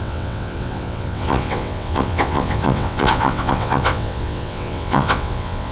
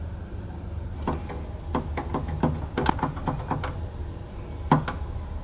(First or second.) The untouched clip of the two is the second